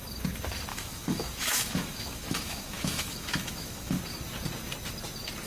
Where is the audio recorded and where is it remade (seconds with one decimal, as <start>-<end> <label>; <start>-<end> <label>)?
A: 0.0-0.7 recorded; 0.7-4.0 remade; 4.0-5.5 recorded